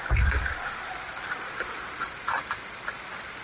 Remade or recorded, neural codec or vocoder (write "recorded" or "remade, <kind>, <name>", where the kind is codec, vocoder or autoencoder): recorded